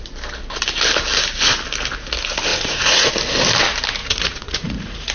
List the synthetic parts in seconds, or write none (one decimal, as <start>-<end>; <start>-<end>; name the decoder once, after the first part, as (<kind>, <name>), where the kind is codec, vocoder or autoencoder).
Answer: 2.5-3.1 (vocoder, Vocos); 4.0-5.1